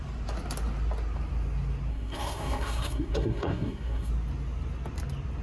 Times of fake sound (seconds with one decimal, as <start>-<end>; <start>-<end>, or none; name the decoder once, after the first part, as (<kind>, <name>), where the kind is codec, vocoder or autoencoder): 1.9-4.1 (codec, SNAC)